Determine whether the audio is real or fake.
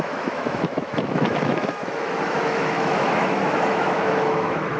fake